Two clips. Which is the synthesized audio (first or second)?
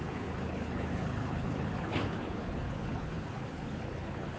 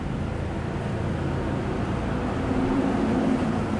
first